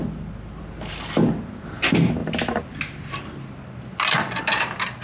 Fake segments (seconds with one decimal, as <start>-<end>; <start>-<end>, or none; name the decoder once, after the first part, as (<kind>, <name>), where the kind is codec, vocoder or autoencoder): none